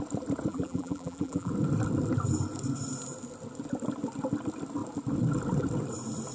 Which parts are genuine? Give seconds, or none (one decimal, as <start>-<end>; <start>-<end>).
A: 0.0-0.5; 1.5-6.3